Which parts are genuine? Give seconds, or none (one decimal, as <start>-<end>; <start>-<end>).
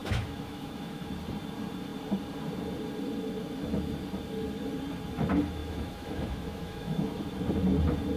1.1-5.6; 7.2-8.2